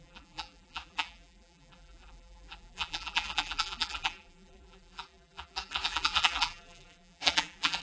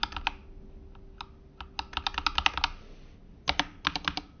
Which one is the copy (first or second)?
first